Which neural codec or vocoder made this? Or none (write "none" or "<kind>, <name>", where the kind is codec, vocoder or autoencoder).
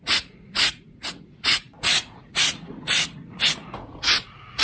vocoder, Vocos